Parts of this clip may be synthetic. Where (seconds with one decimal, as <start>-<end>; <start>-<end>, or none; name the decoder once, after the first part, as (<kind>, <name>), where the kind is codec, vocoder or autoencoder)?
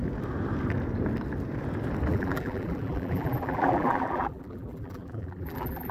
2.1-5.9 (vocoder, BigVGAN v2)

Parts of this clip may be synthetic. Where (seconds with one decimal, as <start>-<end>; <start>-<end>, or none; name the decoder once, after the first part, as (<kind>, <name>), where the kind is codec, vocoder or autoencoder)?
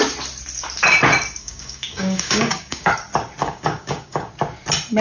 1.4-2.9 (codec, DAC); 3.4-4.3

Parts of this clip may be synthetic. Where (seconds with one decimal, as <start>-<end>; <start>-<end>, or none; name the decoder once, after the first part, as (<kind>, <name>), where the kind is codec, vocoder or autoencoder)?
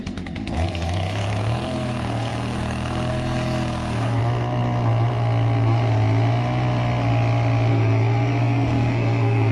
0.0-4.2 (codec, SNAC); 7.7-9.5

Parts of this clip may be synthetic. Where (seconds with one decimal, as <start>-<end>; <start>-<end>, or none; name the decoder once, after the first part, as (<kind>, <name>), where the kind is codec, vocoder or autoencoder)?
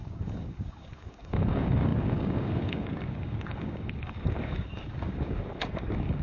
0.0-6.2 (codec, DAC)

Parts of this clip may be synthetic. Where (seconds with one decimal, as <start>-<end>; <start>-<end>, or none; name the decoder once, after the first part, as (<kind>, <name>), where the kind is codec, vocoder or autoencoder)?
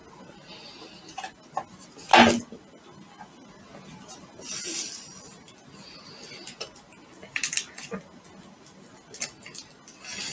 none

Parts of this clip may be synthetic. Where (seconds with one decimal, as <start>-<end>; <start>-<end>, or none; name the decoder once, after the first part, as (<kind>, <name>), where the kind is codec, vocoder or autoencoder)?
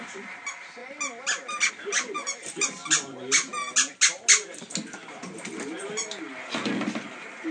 0.0-0.8 (vocoder, BigVGAN v2); 1.7-3.5; 5.4-7.5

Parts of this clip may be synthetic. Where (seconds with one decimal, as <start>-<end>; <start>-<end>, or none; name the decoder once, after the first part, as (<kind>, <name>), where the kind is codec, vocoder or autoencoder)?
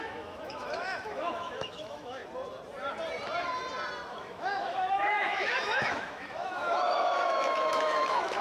0.0-2.2 (autoencoder, DAC-VAE); 4.1-8.4